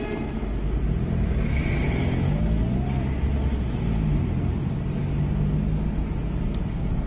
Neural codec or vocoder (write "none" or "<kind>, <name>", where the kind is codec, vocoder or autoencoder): none